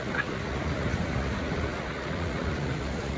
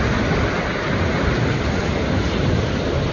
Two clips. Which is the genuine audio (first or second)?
second